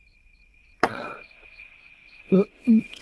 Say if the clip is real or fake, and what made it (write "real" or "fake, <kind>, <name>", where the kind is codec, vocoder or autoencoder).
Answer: fake, vocoder, WaveNeXt